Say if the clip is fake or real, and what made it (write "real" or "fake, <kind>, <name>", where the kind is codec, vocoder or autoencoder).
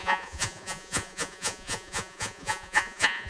fake, vocoder, Vocos